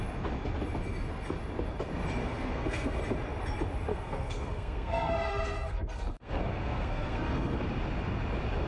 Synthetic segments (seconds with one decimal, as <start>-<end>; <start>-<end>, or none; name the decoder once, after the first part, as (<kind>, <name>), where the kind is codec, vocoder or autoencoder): 2.2-3.0 (codec, SNAC); 3.9-7.6